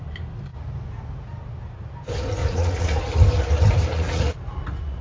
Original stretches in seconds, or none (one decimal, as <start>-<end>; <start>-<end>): 0.0-2.4; 3.0-3.9